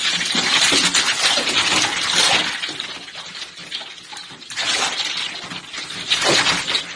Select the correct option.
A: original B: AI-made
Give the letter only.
A